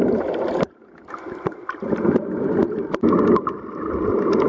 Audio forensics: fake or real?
real